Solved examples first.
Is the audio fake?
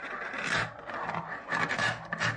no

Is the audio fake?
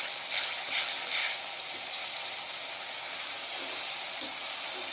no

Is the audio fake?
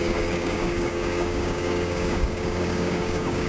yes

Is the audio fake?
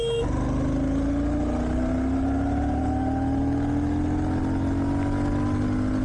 no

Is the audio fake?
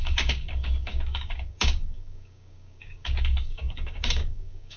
yes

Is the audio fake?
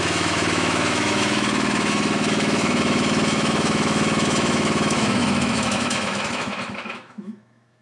yes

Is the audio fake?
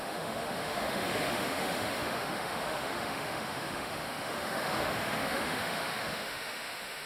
yes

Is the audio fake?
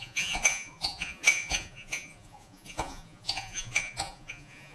yes